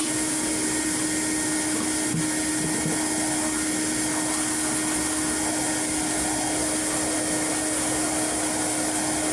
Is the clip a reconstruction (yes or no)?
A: no